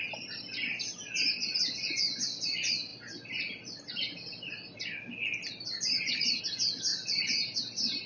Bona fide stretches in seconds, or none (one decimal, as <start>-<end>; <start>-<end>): 0.0-1.0; 1.9-6.9